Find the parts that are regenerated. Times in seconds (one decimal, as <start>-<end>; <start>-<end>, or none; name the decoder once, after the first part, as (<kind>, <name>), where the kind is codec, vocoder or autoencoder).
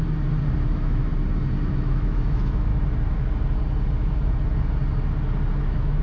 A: 0.7-1.1 (autoencoder, DAC-VAE); 1.7-2.7; 5.6-6.0